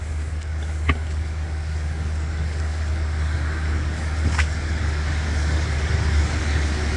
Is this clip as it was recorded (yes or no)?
no